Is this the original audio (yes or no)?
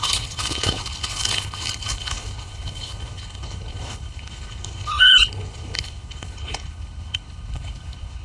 no